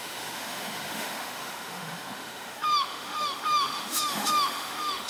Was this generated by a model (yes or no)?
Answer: yes